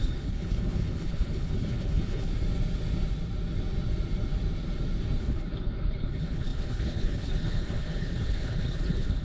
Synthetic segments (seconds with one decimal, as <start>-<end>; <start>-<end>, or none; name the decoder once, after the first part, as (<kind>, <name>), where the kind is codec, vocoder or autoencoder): 0.0-2.3 (codec, HILCodec); 5.2-9.2